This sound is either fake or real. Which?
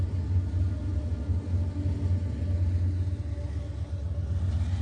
real